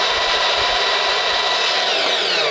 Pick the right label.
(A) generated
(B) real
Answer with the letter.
B